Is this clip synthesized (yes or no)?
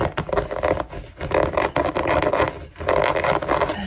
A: no